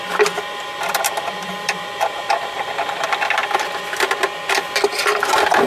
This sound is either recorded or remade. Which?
remade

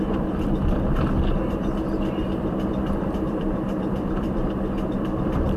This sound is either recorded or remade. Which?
remade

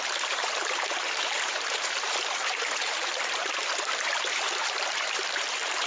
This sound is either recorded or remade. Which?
remade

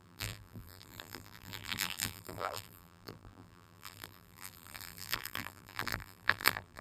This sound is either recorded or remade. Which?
remade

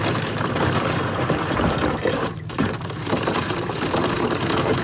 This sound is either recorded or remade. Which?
remade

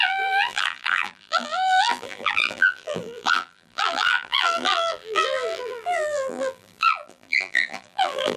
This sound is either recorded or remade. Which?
remade